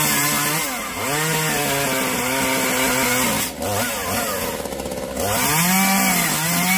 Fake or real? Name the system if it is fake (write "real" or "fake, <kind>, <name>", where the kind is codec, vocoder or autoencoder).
real